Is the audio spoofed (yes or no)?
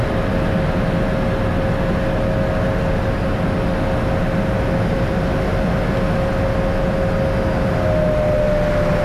no